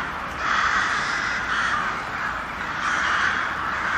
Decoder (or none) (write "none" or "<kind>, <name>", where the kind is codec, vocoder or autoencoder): vocoder, BigVGAN v2